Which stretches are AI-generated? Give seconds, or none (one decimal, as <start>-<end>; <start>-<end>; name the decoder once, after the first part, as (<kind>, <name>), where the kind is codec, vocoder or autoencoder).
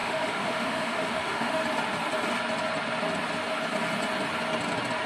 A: 0.0-1.6 (autoencoder, DAC-VAE)